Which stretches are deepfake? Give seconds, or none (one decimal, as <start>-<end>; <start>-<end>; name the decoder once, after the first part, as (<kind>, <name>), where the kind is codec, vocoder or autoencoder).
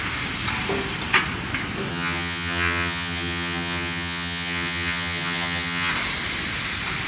1.9-5.9 (vocoder, HiFi-GAN)